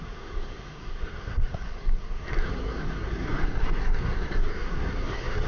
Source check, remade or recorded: remade